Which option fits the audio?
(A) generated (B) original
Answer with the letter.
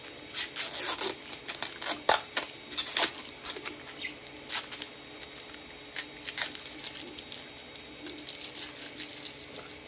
B